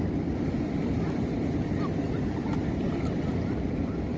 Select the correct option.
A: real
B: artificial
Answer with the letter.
A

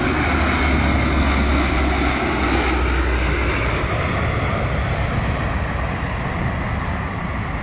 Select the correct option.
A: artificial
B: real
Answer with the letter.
B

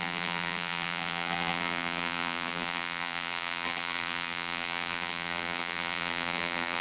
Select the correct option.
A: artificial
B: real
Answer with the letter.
A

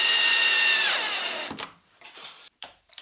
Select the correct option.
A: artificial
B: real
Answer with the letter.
A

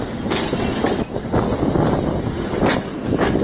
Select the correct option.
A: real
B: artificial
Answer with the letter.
A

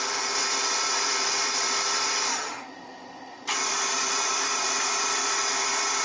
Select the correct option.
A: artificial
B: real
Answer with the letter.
A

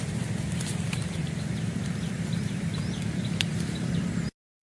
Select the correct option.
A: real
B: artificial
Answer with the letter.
B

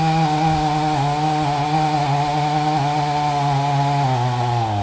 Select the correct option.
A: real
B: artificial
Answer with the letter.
A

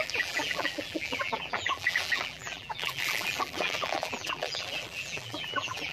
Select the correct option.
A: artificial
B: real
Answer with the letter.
A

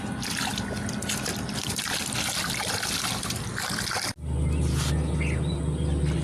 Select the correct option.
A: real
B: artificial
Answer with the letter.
A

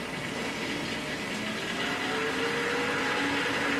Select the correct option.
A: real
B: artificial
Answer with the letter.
A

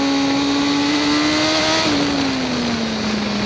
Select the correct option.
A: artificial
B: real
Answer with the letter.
B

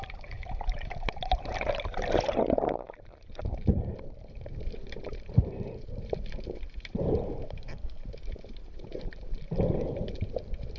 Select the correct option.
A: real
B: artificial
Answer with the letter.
B